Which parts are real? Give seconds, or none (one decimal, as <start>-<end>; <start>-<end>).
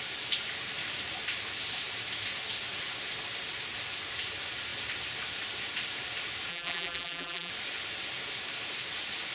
0.0-6.5; 7.5-9.3